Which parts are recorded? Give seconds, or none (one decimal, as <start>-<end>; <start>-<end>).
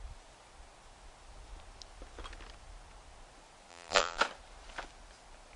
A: 0.0-3.7; 4.2-5.6